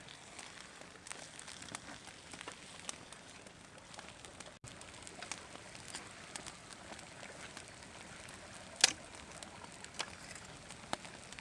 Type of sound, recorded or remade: recorded